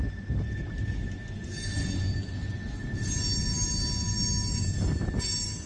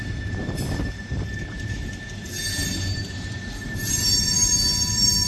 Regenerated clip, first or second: second